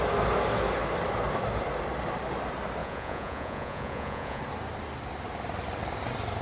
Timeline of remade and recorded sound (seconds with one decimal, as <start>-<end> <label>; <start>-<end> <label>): 0.0-2.8 recorded; 2.8-4.4 remade; 4.4-6.4 recorded

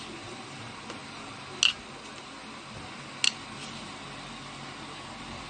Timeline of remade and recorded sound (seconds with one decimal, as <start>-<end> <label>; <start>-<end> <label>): 0.0-5.5 recorded

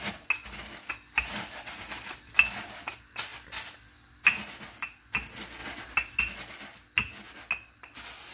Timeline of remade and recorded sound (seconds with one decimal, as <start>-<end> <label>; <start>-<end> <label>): 0.0-8.3 recorded

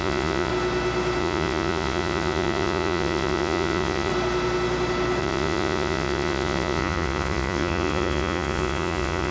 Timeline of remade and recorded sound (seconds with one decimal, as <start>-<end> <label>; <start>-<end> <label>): 0.0-0.5 remade; 0.5-1.2 recorded; 1.2-4.1 remade; 4.1-5.2 recorded; 5.2-9.3 remade

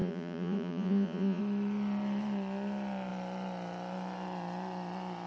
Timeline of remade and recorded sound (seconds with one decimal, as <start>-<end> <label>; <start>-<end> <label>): 0.0-1.4 remade; 1.4-5.3 recorded